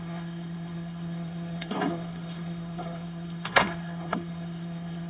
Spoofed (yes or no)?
yes